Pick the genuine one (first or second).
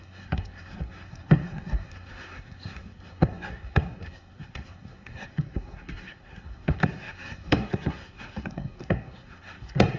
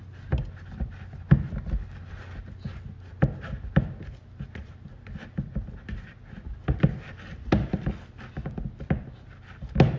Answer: second